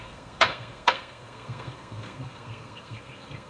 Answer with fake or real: fake